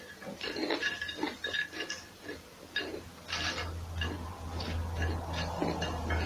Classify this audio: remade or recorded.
recorded